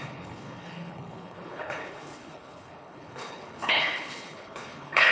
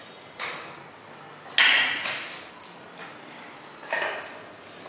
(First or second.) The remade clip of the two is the first